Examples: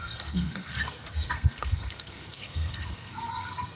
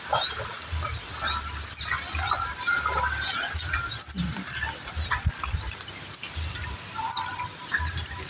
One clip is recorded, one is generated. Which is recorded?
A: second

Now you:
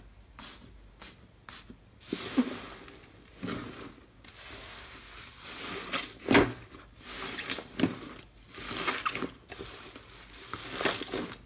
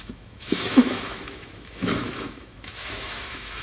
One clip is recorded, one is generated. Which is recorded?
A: first